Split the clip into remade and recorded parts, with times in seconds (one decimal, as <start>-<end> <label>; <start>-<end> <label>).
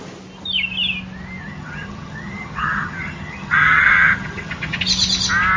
0.0-1.4 recorded; 1.4-4.8 remade; 4.8-5.6 recorded